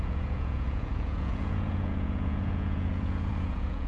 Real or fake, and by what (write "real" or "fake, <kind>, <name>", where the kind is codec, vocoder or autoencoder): fake, vocoder, Vocos